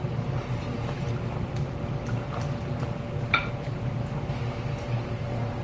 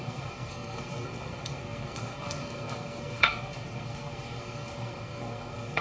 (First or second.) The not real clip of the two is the second